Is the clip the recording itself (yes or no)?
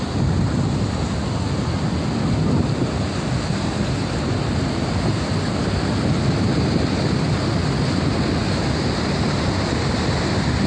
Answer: yes